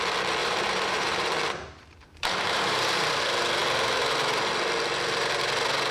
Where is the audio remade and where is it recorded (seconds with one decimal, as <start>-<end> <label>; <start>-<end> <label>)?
0.0-0.4 recorded; 0.4-3.2 remade; 3.2-5.9 recorded

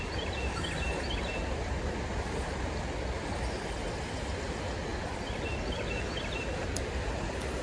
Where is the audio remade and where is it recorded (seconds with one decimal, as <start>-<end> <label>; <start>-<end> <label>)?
0.0-7.6 recorded

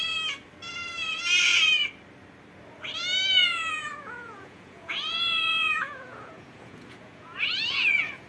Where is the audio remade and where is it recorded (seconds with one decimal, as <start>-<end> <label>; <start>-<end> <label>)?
0.0-3.4 recorded; 3.4-8.3 remade